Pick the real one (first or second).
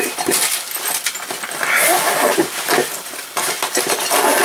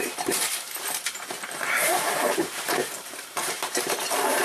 first